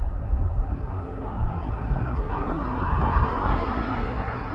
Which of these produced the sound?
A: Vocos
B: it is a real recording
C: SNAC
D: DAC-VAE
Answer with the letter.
C